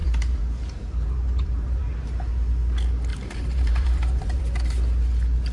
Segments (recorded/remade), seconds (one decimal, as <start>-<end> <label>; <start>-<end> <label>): 0.0-1.8 remade; 1.8-3.1 recorded; 3.1-4.4 remade; 4.4-5.5 recorded